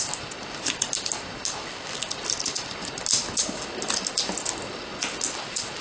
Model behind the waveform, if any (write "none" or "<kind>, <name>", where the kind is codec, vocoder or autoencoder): none